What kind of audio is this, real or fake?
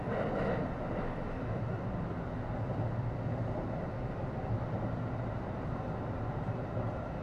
real